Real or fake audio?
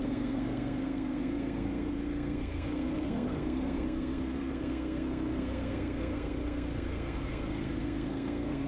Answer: fake